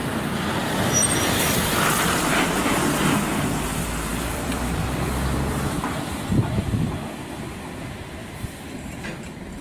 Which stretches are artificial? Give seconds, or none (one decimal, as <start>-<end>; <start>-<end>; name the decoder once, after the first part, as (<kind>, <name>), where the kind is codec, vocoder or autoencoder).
0.0-1.4 (vocoder, BigVGAN v2); 4.1-6.9; 8.2-8.8